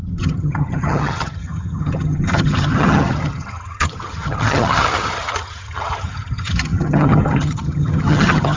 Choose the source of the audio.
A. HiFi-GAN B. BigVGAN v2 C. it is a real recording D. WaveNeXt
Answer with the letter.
A